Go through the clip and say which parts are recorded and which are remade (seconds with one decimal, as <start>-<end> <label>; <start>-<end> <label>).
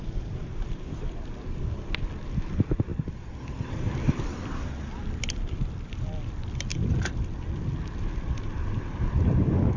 0.0-2.9 recorded; 2.9-6.1 remade; 6.1-9.8 recorded